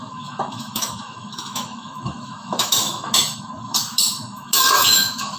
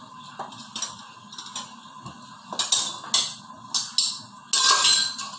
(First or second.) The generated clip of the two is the first